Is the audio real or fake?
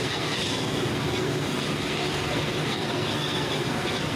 fake